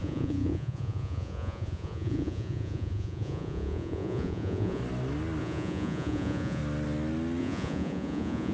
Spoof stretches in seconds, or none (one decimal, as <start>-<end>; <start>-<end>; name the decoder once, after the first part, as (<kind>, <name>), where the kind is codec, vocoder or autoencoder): 0.0-4.8 (vocoder, Vocos); 5.4-6.6; 7.4-8.5